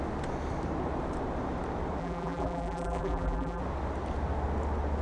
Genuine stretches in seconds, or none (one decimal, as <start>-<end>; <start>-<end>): 0.0-2.0; 3.6-5.0